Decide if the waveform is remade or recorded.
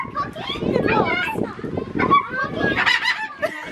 remade